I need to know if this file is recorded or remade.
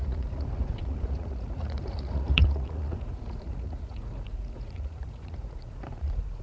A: remade